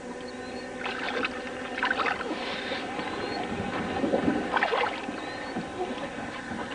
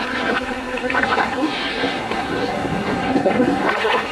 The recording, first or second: first